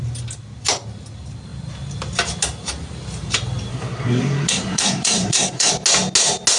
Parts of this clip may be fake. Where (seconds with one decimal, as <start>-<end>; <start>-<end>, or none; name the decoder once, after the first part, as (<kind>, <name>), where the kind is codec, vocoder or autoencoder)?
3.7-5.7 (codec, SNAC)